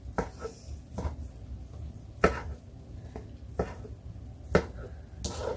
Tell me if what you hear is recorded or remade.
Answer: recorded